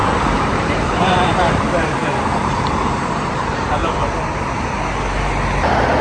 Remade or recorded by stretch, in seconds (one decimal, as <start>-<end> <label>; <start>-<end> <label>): 0.0-3.8 remade; 3.8-6.0 recorded